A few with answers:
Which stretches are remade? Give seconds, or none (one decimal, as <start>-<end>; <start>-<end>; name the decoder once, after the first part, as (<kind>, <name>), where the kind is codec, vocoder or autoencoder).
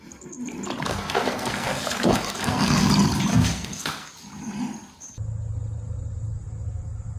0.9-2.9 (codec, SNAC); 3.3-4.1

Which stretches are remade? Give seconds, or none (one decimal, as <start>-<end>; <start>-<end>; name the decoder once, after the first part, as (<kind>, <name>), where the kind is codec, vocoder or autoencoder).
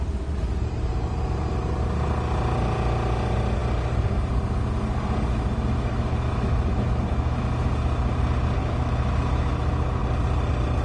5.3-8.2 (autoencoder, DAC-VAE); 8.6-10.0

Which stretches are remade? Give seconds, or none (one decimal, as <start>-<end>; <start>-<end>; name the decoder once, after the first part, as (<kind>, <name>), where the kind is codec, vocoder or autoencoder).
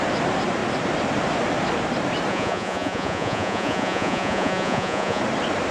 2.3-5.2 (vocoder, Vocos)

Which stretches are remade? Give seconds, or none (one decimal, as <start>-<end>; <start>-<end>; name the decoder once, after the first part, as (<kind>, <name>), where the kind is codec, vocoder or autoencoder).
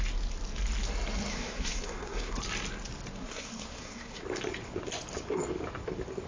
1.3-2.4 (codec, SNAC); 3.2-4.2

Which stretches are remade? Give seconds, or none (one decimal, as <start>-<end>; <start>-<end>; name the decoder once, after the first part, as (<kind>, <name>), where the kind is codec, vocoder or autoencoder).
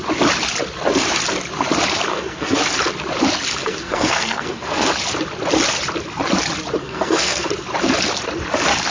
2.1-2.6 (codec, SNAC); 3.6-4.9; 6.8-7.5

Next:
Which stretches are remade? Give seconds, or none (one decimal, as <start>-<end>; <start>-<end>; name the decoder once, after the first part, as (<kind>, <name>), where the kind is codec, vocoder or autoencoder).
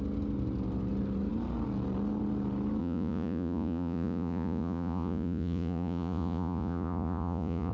2.8-7.7 (vocoder, Vocos)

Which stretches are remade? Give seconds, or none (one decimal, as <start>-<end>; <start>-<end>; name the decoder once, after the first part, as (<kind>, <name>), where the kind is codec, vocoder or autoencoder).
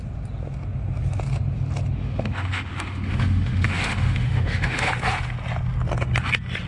2.0-4.9 (autoencoder, DAC-VAE)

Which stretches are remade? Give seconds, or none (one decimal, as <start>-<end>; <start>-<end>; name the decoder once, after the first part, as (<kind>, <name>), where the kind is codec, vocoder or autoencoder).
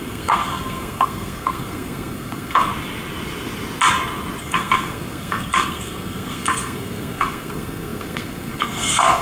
0.0-2.7 (codec, SNAC); 4.4-9.2